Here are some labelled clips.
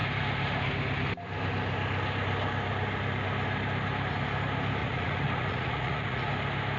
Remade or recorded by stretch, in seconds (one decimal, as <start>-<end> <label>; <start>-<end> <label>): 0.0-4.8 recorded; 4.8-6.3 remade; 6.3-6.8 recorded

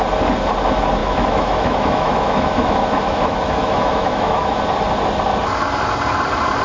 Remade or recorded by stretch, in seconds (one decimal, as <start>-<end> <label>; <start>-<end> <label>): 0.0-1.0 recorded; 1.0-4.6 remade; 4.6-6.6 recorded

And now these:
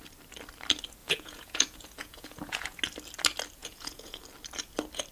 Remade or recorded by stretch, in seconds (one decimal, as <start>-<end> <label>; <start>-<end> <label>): 0.0-1.0 recorded; 1.0-2.8 remade; 2.8-3.6 recorded; 3.6-4.2 remade; 4.2-5.1 recorded